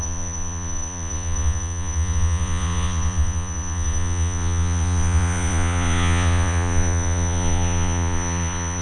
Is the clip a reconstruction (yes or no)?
yes